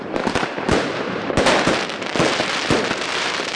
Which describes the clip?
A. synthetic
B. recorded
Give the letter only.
A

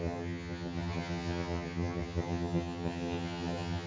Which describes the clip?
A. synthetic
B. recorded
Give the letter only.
A